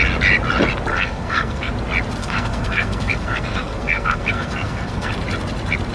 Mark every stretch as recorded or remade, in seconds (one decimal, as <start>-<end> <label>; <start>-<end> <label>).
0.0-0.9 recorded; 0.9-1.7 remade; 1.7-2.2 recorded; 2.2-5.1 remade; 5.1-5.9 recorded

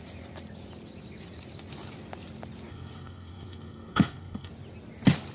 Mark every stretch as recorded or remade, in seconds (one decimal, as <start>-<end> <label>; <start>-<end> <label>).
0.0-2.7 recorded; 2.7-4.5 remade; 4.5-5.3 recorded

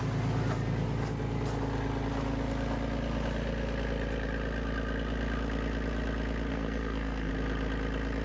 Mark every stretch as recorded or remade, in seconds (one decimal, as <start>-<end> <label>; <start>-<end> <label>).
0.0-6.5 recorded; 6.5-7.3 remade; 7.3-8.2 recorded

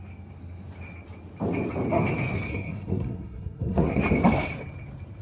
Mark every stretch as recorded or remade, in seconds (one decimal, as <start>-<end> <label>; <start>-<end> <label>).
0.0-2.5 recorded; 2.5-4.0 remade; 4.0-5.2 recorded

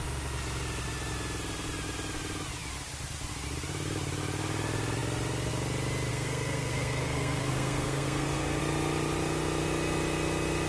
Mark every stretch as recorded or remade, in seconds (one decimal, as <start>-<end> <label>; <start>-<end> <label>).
0.0-6.1 recorded; 6.1-8.6 remade; 8.6-10.7 recorded